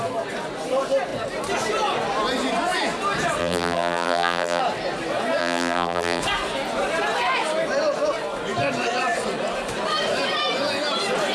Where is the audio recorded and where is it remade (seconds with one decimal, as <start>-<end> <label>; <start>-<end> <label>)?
0.0-3.4 recorded; 3.4-4.6 remade; 4.6-5.4 recorded; 5.4-6.2 remade; 6.2-11.3 recorded